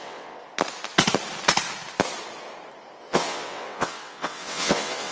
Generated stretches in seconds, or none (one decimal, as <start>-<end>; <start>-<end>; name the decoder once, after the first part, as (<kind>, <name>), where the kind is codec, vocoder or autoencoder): 0.0-0.4 (vocoder, WaveNeXt); 3.0-5.1